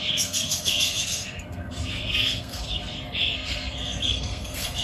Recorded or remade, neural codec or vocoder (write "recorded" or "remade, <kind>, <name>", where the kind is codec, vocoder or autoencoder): remade, codec, SNAC